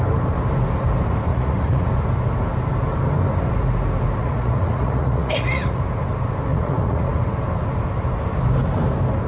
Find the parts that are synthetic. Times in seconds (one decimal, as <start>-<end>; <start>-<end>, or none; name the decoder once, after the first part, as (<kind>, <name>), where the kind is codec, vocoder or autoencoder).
1.3-1.9 (vocoder, Vocos); 4.2-5.8; 6.5-7.2